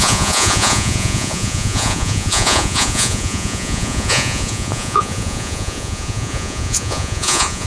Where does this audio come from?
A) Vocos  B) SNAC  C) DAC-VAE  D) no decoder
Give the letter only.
A